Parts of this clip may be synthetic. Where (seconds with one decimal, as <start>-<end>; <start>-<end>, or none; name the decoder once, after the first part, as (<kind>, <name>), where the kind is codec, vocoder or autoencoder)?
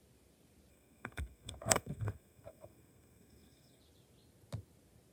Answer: 0.7-3.8 (codec, SNAC)